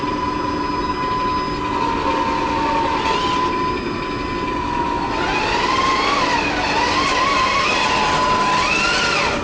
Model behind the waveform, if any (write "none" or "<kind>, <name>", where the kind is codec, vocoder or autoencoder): none